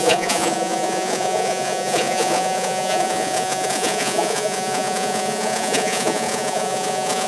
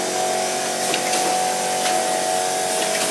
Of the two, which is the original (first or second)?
second